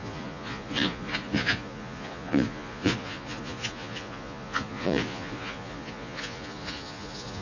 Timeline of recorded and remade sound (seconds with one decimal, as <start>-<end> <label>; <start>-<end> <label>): 0.0-7.4 remade